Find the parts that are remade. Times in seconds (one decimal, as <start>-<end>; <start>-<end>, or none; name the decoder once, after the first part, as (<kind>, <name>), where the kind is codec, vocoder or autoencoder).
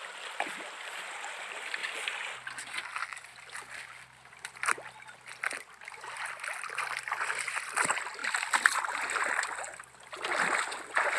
none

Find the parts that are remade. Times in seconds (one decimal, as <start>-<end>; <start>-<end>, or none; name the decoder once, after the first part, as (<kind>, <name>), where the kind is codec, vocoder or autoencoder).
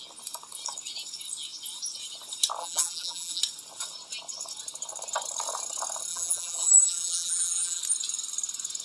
2.6-3.4 (vocoder, BigVGAN v2); 6.1-7.8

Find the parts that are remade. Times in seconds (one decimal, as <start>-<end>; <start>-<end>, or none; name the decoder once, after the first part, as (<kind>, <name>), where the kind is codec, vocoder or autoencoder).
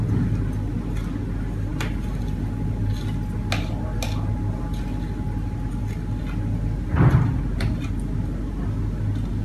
none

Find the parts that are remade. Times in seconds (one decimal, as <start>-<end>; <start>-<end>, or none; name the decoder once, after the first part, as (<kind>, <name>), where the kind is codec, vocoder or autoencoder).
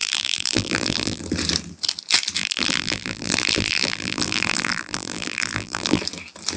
0.0-1.2 (vocoder, BigVGAN v2); 2.4-6.0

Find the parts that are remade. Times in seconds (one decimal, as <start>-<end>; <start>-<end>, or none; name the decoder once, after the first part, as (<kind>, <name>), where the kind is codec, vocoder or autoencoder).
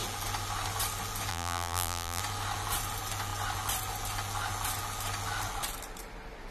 1.3-2.2 (vocoder, BigVGAN v2)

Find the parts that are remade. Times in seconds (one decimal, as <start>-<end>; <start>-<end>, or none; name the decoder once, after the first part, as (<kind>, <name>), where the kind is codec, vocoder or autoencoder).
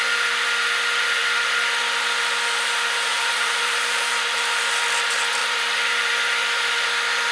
3.1-4.6 (vocoder, BigVGAN v2); 5.4-6.1